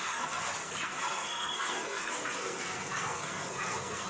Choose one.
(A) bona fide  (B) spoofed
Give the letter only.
B